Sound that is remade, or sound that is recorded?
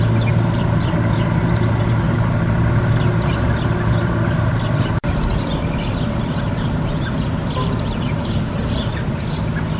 remade